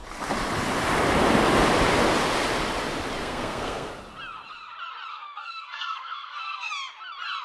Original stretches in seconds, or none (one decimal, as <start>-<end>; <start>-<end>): 0.0-3.2; 3.9-5.1; 6.7-7.4